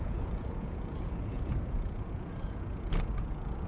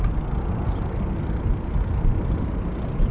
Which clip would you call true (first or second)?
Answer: second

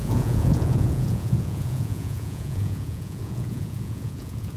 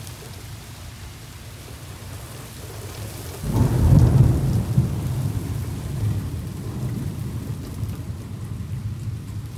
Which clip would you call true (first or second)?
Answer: second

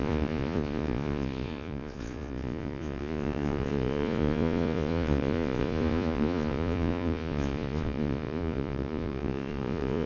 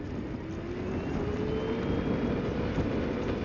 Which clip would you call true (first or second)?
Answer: second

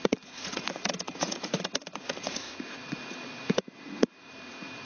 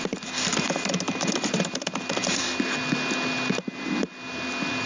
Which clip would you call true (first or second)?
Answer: second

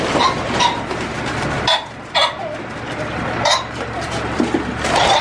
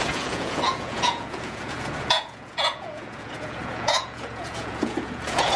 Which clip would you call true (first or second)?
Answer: first